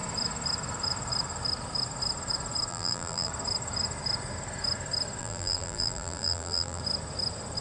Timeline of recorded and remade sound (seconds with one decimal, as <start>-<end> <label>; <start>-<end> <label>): 0.0-2.7 recorded; 2.7-3.3 remade; 3.3-5.2 recorded; 5.2-6.8 remade; 6.8-7.6 recorded